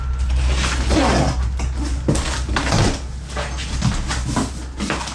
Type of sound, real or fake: real